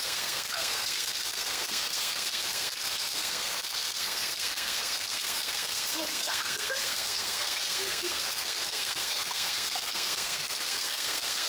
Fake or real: fake